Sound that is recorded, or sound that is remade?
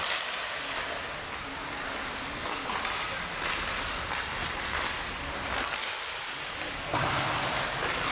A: recorded